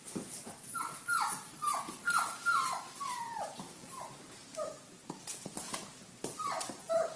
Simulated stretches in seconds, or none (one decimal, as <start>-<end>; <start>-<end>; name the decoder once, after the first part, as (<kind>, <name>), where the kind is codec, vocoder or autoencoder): 0.0-7.2 (vocoder, BigVGAN v2)